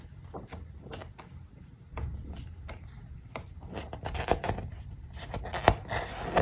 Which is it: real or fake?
fake